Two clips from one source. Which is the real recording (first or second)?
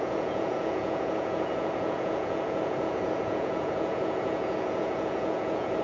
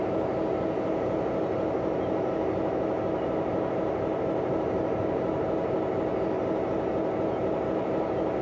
second